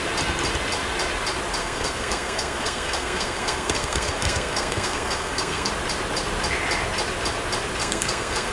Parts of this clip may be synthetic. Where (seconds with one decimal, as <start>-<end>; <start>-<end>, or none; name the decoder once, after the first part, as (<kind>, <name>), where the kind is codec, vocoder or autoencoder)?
1.6-5.7 (codec, SNAC); 7.8-8.5